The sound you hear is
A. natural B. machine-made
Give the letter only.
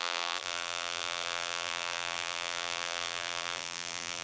B